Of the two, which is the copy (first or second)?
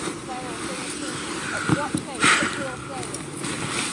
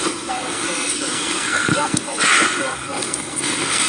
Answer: second